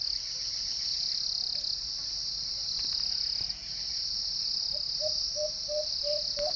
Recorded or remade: recorded